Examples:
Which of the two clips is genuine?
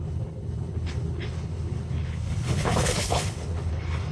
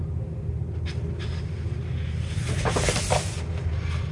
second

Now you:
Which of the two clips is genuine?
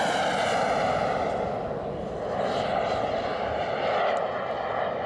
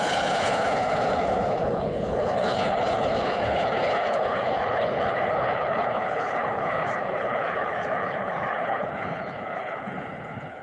first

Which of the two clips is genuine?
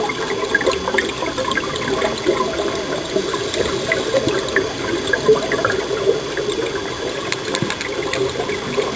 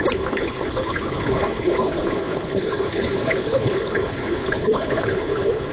first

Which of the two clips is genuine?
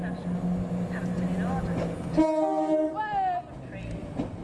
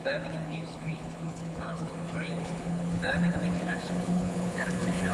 first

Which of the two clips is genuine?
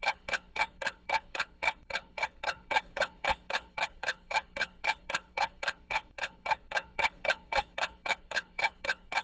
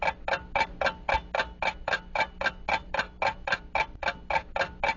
second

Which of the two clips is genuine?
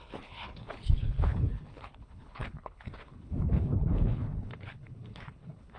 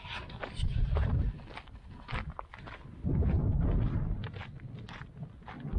second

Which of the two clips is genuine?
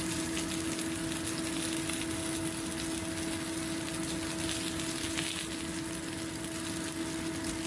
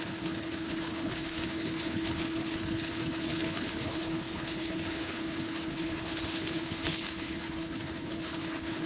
first